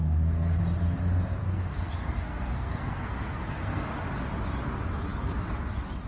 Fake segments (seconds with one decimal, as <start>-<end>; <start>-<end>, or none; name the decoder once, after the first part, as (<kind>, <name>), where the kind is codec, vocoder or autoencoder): 0.0-0.6 (codec, SNAC); 1.4-3.9